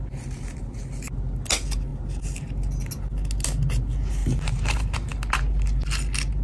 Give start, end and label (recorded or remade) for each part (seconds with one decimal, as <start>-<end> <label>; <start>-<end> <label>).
0.0-4.2 recorded; 4.2-5.1 remade; 5.1-6.4 recorded

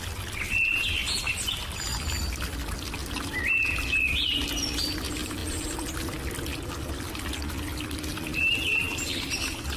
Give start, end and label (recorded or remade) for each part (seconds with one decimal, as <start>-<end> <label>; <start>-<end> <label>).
0.0-9.8 recorded

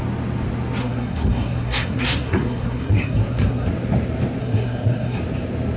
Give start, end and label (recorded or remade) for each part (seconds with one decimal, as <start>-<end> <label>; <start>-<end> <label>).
0.0-0.8 recorded; 0.8-3.7 remade; 3.7-4.4 recorded; 4.4-5.2 remade; 5.2-5.8 recorded

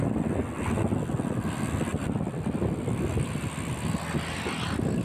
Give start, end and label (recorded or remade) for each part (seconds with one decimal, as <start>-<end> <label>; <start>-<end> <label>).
0.0-5.0 recorded

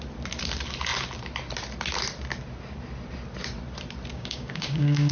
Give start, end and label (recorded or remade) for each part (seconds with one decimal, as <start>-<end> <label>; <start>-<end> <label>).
0.0-4.1 recorded; 4.1-5.1 remade

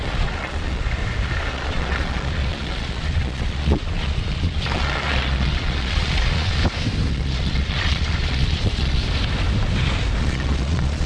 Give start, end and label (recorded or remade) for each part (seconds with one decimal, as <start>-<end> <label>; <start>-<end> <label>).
0.0-1.0 remade; 1.0-1.5 recorded; 1.5-6.6 remade; 6.6-7.1 recorded; 7.1-9.0 remade; 9.0-10.2 recorded; 10.2-11.1 remade